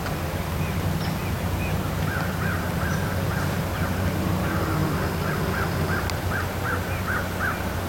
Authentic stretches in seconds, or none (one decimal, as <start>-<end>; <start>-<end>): 0.0-7.9